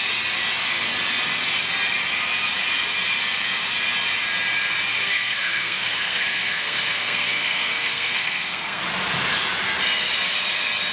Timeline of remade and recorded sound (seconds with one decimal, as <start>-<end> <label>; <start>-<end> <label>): 0.0-5.0 recorded; 5.0-8.8 remade; 8.8-10.9 recorded